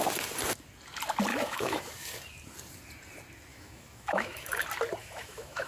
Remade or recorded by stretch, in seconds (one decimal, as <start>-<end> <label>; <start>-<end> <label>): 0.0-1.3 recorded; 1.3-1.8 remade; 1.8-3.5 recorded; 3.5-4.6 remade; 4.6-5.0 recorded; 5.0-5.7 remade